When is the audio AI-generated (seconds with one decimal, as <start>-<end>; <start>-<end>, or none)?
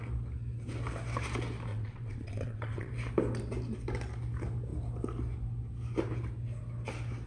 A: 1.7-2.9